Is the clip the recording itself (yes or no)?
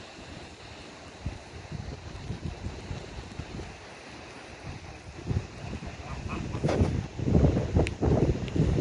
yes